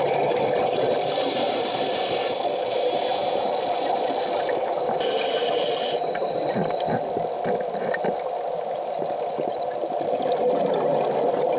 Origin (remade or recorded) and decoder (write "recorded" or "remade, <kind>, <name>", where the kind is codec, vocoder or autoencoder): recorded